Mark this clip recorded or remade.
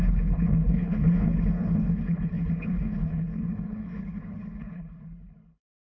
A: remade